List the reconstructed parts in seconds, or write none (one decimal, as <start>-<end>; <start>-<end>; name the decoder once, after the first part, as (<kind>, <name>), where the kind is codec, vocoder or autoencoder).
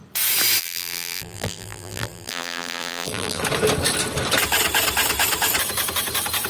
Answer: 0.6-3.4 (vocoder, BigVGAN v2)